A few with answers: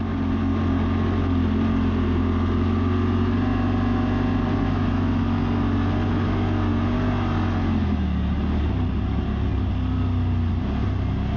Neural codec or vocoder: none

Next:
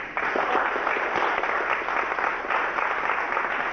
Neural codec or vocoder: none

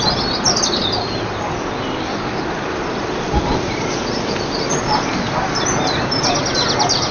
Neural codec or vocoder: none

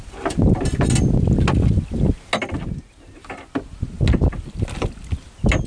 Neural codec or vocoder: none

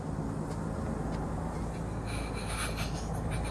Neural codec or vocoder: none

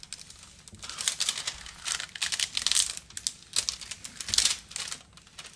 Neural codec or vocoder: none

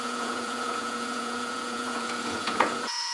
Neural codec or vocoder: vocoder, Vocos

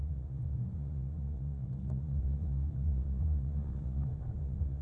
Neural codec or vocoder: vocoder, Vocos